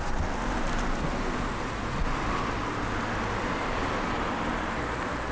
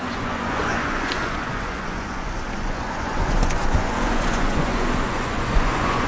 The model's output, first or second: second